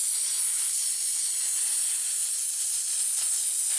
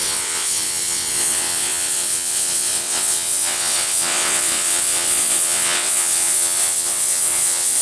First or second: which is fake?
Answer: second